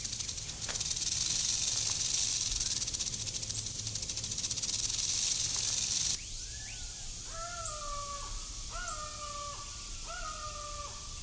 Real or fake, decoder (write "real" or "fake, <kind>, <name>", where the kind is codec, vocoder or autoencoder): real